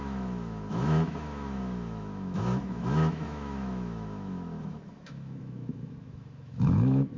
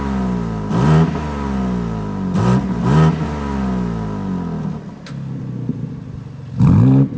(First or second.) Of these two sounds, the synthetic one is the first